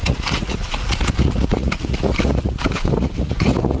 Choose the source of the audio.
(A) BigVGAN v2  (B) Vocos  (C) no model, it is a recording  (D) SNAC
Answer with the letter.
B